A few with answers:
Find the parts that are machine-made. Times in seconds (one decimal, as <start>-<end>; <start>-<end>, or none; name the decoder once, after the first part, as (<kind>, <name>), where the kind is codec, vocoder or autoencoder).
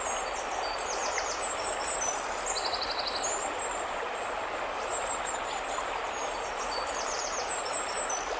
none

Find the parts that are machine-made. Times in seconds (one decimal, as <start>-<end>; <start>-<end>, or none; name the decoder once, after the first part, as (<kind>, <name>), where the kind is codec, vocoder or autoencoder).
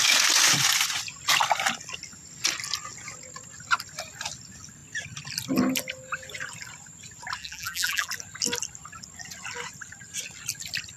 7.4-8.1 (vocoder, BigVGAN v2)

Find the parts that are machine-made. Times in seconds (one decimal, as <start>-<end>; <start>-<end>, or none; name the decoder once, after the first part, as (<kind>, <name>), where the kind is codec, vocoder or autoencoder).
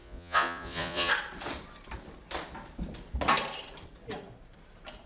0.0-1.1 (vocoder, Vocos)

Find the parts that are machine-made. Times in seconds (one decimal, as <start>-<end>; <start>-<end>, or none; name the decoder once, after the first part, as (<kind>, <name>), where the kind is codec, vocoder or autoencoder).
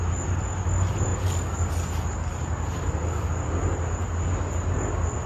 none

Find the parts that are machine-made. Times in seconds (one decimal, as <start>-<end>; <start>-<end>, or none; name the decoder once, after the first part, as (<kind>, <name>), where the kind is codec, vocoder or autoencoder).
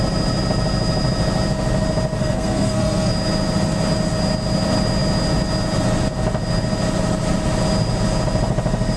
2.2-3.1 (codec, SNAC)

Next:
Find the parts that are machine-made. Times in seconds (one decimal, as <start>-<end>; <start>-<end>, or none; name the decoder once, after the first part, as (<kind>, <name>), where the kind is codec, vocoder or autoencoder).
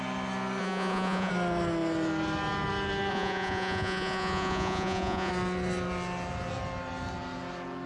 0.6-1.3 (vocoder, Vocos); 3.1-5.3